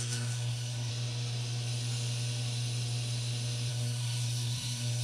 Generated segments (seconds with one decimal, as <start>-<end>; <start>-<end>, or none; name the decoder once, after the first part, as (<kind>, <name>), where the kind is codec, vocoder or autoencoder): 0.0-0.9 (codec, SNAC); 3.7-5.0